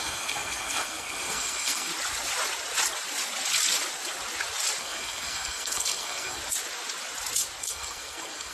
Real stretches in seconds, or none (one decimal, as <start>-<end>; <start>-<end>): 1.9-4.8; 6.4-7.6